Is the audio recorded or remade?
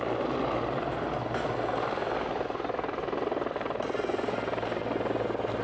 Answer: recorded